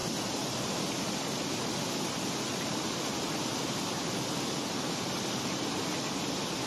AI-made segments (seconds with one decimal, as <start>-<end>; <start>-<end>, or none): none